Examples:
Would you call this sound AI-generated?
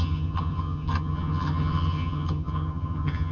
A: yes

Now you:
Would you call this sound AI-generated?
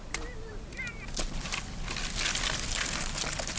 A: no